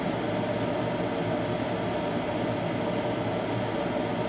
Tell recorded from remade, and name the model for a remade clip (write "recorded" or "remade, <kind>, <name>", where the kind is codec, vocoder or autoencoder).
recorded